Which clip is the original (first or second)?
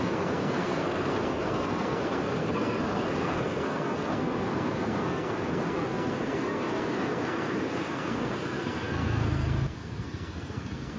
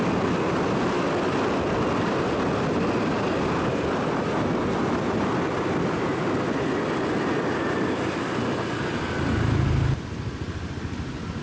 second